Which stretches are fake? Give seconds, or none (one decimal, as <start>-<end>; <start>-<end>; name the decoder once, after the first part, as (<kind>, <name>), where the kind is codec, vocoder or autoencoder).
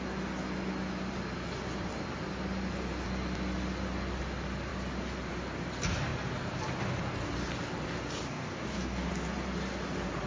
8.2-9.1 (codec, DAC)